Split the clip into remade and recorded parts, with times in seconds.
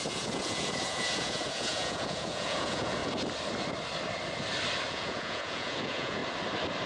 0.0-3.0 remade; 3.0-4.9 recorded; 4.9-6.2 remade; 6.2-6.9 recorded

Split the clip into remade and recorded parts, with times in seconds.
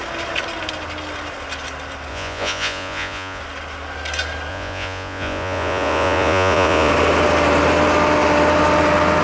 0.0-2.1 recorded; 2.1-3.4 remade; 3.4-4.5 recorded; 4.5-6.9 remade; 6.9-9.2 recorded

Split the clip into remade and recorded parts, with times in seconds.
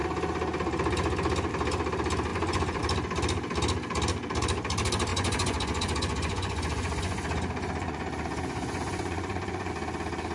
0.0-2.3 recorded; 2.3-2.8 remade; 2.8-5.1 recorded; 5.1-9.7 remade; 9.7-10.3 recorded